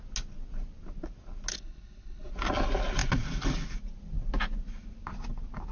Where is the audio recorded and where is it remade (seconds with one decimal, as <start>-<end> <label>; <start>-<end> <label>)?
0.0-1.5 recorded; 1.5-2.3 remade; 2.3-5.7 recorded